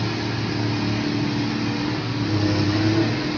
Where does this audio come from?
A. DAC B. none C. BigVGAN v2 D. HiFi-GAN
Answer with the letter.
B